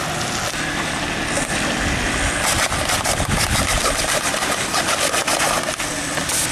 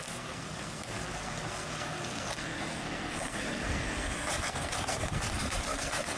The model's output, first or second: second